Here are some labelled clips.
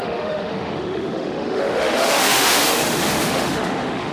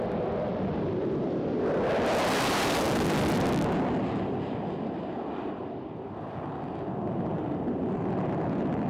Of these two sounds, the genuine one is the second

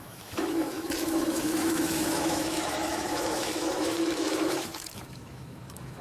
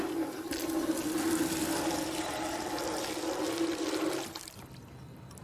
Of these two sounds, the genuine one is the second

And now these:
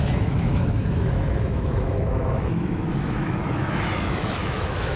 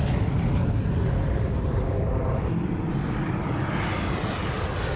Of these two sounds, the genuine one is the second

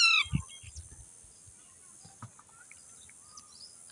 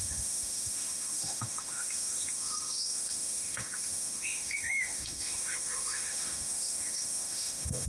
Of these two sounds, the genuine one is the first